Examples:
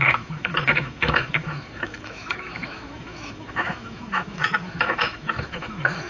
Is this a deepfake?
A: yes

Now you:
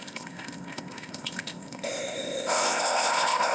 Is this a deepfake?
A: yes